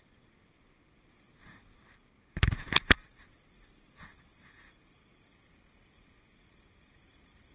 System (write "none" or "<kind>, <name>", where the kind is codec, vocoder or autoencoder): none